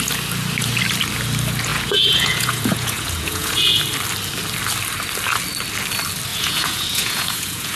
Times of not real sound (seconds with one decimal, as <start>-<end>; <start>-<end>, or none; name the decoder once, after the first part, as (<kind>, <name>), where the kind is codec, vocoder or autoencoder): 1.7-3.8 (vocoder, Vocos); 6.3-7.8